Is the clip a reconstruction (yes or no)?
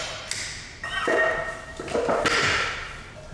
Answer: no